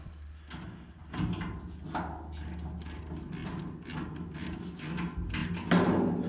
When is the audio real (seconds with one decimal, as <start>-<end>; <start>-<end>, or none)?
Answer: 0.0-6.3